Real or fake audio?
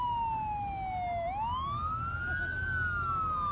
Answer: real